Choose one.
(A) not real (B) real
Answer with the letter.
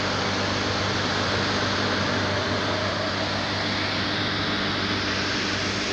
B